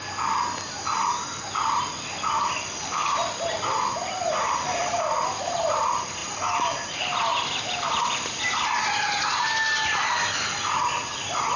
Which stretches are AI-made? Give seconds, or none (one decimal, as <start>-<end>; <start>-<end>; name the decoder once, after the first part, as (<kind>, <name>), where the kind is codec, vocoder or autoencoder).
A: none